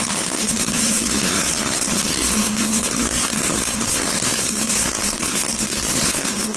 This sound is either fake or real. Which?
fake